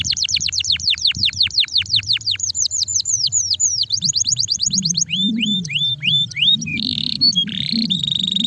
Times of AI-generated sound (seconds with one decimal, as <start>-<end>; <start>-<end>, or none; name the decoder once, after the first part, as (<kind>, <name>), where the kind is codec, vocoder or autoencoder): 0.0-8.5 (vocoder, BigVGAN v2)